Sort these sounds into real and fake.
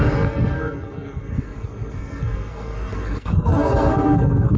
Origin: fake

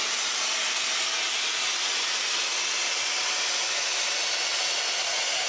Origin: real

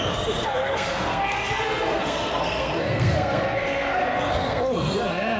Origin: fake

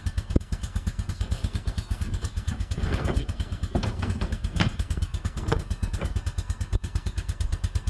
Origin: fake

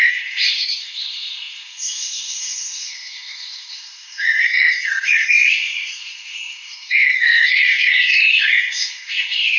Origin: fake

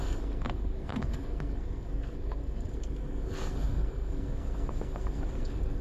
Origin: fake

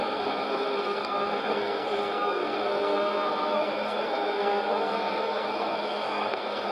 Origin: fake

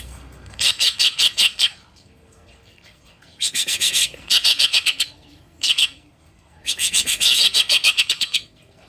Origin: fake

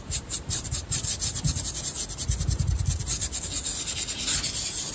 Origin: real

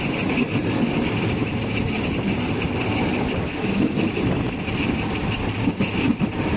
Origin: real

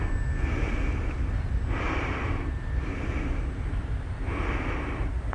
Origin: real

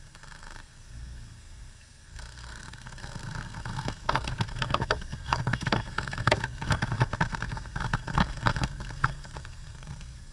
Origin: fake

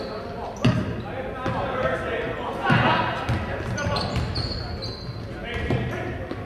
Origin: real